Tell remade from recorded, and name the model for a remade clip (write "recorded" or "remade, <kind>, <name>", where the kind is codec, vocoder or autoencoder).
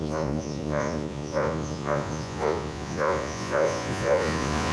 remade, vocoder, Vocos